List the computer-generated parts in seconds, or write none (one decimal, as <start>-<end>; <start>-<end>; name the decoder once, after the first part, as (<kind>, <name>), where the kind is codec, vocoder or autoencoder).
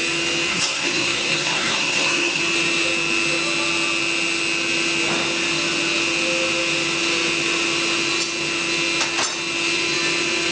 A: 0.5-2.4 (codec, SNAC)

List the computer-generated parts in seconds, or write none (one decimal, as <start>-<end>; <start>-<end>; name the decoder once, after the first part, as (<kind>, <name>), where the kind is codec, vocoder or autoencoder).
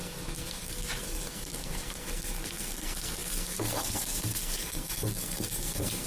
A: 0.0-6.1 (codec, SNAC)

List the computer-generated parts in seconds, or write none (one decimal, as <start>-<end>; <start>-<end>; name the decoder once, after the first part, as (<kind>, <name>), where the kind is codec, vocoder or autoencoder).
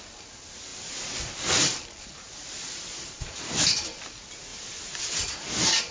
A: none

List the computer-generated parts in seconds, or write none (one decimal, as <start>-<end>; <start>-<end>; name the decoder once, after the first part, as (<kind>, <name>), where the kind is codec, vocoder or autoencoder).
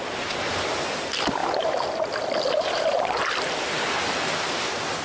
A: none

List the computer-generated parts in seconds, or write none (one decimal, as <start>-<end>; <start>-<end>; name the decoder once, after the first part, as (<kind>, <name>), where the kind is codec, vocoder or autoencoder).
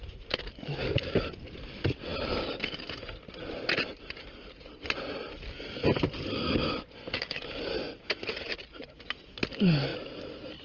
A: none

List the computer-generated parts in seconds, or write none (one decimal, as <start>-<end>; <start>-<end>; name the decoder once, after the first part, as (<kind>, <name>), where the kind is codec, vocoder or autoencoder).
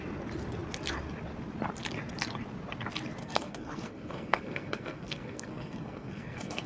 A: 3.2-6.7 (codec, SNAC)